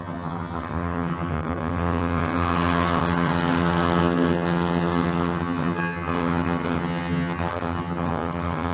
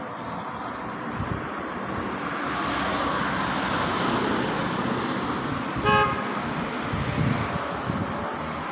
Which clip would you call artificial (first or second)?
first